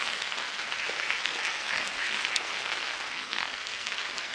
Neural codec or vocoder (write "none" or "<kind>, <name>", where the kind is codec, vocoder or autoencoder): codec, SNAC